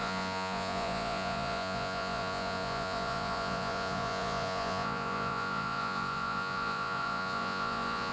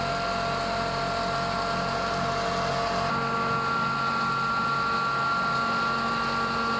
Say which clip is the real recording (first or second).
second